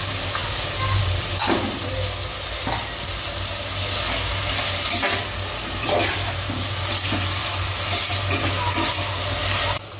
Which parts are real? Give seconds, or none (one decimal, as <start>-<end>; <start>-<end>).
0.0-10.0